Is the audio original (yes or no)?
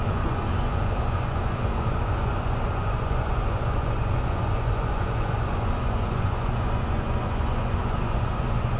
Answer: no